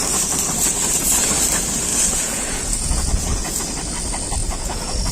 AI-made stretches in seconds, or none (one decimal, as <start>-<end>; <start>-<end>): 1.9-3.6; 4.4-5.1